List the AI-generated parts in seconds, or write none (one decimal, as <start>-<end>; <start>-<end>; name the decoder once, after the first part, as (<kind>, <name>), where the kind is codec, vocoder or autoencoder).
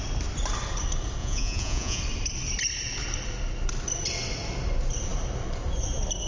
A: 1.2-2.0 (vocoder, Vocos)